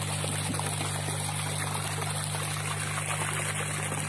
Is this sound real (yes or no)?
yes